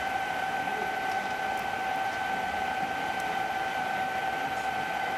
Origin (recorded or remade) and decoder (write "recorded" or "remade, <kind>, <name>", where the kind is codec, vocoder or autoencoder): remade, vocoder, BigVGAN v2